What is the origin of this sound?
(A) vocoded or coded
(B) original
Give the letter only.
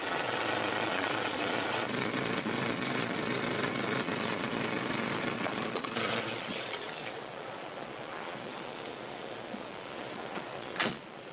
A